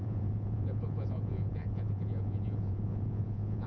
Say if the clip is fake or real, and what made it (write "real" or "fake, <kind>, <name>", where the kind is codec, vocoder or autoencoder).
fake, vocoder, Vocos